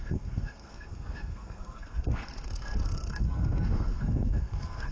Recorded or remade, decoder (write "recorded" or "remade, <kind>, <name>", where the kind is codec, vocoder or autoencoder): remade, codec, SNAC